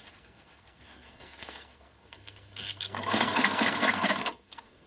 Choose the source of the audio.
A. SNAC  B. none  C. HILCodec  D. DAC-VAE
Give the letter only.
A